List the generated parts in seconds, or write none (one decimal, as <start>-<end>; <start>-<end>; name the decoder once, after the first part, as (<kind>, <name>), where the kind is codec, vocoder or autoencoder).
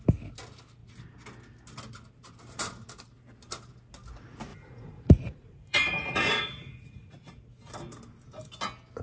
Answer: 4.5-7.3 (vocoder, Vocos)